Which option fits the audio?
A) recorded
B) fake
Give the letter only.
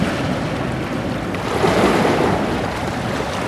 A